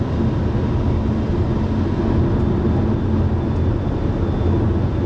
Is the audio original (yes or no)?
yes